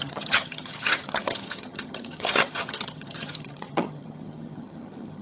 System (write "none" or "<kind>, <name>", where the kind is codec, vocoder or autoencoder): vocoder, HiFi-GAN